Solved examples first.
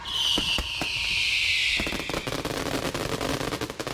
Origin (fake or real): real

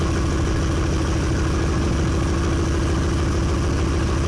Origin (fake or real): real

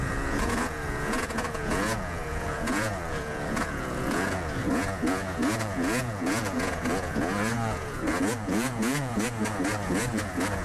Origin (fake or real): fake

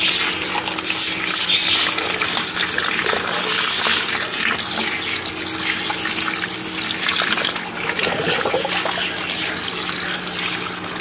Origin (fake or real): real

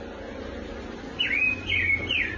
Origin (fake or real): real